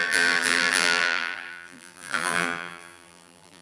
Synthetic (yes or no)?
yes